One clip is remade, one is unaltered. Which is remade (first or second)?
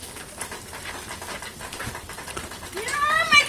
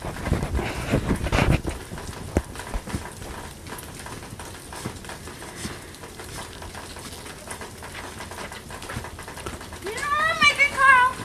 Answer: first